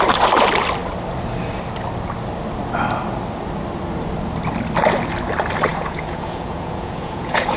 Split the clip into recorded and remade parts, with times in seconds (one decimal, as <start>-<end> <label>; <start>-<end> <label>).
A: 0.0-5.7 recorded; 5.7-7.6 remade